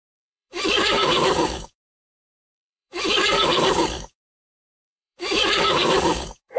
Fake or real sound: fake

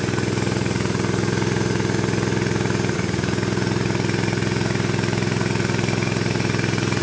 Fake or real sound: real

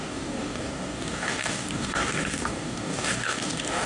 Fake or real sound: fake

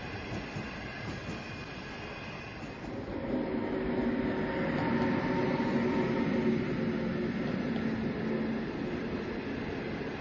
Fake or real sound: real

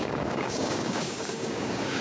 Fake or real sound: fake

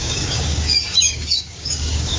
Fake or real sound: fake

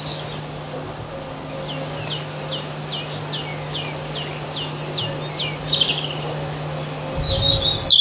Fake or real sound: real